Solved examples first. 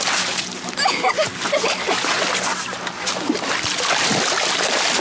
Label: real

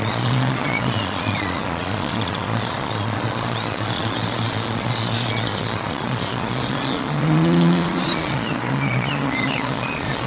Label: fake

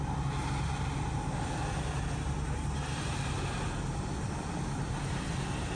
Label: real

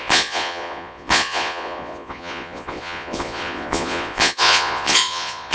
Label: fake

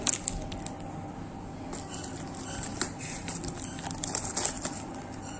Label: real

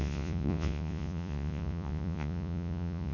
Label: fake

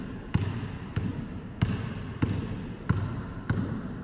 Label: real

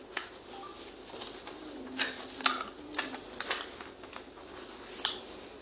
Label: real